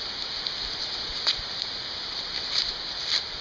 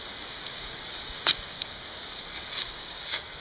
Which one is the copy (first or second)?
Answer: second